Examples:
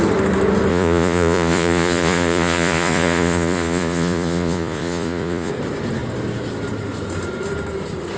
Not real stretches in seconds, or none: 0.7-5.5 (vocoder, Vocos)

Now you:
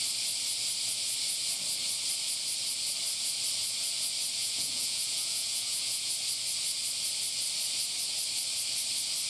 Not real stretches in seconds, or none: 4.4-6.1 (vocoder, Vocos)

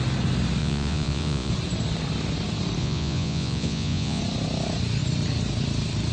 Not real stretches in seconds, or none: 0.6-1.5 (vocoder, Vocos); 2.8-4.2

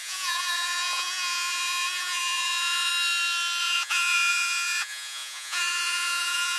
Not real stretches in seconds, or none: 0.0-2.9 (vocoder, Vocos); 3.6-6.6